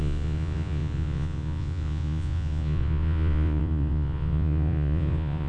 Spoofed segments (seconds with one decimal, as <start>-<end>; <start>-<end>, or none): 0.0-5.5